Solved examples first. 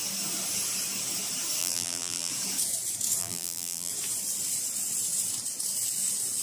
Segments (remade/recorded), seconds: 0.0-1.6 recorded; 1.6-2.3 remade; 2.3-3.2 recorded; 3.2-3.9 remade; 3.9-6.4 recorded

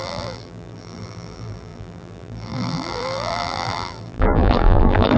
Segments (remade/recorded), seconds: 0.0-5.2 remade